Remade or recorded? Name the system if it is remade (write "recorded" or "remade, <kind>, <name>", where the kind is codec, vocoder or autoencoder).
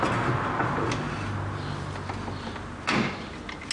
recorded